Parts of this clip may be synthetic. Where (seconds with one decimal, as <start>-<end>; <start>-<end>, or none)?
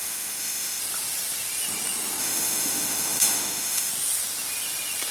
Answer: 0.0-0.8; 2.2-3.9